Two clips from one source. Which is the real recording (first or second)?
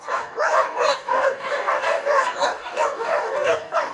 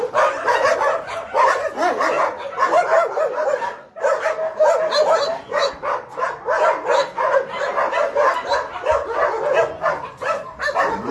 second